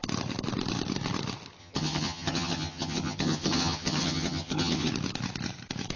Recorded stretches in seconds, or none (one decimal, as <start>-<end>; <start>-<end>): 0.0-1.6; 4.9-6.0